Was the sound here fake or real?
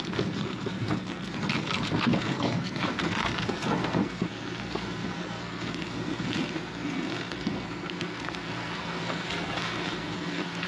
fake